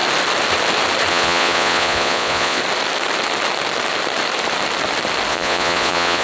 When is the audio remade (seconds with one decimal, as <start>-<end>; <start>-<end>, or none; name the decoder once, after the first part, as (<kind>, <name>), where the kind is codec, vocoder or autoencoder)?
1.1-2.6 (vocoder, Vocos); 5.3-6.2